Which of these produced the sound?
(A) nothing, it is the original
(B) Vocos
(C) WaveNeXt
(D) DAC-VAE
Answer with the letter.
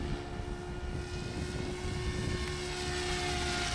A